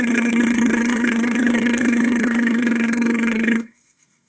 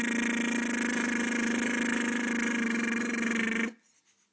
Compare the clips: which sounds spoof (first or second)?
first